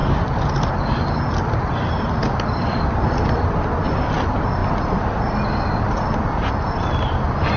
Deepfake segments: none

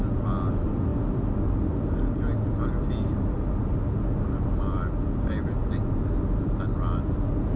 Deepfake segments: none